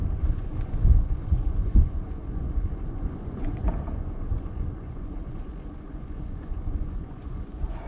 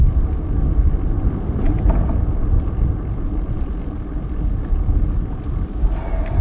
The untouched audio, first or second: second